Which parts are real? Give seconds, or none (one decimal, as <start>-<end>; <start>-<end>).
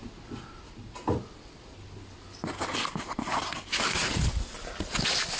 0.0-5.4